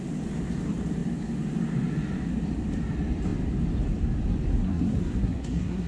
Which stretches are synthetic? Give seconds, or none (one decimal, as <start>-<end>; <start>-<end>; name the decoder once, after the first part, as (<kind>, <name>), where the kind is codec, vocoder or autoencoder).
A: 4.6-5.9 (codec, SNAC)